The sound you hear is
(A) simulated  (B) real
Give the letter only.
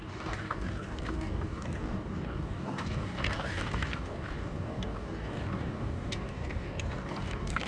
A